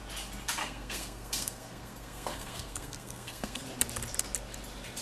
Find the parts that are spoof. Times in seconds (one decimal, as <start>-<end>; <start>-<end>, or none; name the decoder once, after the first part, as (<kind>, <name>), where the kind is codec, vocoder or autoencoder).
0.6-3.6 (codec, SNAC)